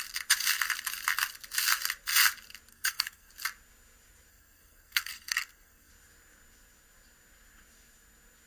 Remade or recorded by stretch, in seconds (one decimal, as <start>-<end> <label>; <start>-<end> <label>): 0.0-2.7 recorded; 2.7-3.3 remade; 3.3-4.3 recorded; 4.3-5.9 remade; 5.9-8.5 recorded